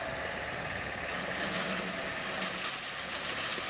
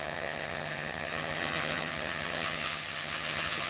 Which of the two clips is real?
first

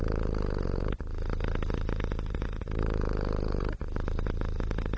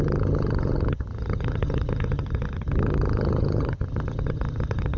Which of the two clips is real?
first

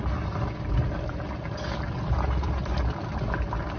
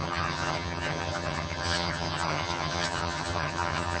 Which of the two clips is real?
first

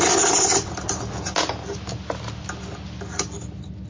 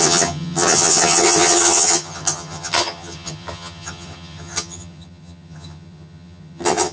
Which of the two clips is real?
first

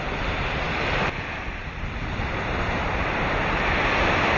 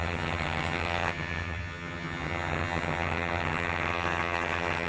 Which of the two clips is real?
first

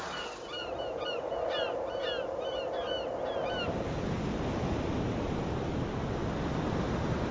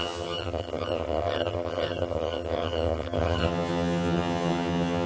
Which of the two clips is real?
first